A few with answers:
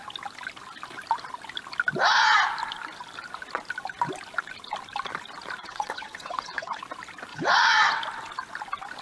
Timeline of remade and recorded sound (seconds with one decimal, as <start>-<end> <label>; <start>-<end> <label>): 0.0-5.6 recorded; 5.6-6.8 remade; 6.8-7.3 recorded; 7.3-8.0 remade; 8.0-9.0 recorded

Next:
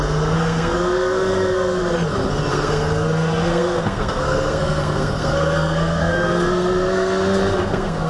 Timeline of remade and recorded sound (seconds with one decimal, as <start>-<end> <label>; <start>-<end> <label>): 0.0-1.8 remade; 1.8-2.5 recorded; 2.5-8.1 remade

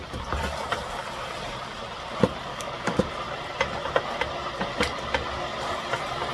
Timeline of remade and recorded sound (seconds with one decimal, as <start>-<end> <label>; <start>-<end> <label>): 0.0-2.5 recorded; 2.5-3.1 remade; 3.1-6.3 recorded

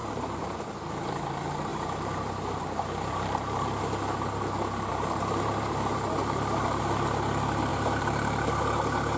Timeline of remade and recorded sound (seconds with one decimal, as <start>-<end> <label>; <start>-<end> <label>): 0.0-1.7 recorded; 1.7-3.8 remade; 3.8-4.9 recorded; 4.9-6.8 remade; 6.8-7.7 recorded; 7.7-8.6 remade; 8.6-9.2 recorded